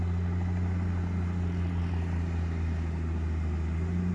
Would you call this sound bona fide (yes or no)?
yes